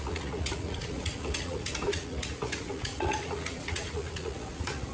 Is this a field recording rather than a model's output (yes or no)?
no